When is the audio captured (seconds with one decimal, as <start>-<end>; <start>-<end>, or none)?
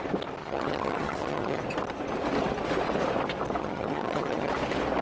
0.0-0.4; 1.6-3.6; 4.5-5.0